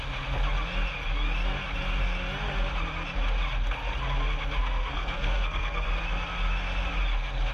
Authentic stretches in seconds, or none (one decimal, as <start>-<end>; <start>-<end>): 0.0-4.8; 5.9-7.5